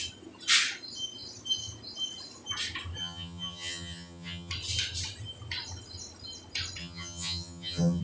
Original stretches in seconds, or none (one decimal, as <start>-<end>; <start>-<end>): 0.0-3.0; 4.5-6.8